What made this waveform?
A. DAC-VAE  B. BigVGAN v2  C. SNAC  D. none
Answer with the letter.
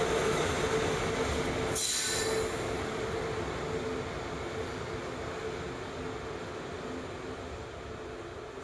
D